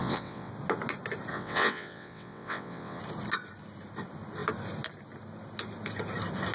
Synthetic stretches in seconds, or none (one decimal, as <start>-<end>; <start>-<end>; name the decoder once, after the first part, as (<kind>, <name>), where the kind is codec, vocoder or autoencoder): 0.0-0.5 (vocoder, WaveNeXt); 1.3-3.0